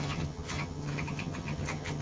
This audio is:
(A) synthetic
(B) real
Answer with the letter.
A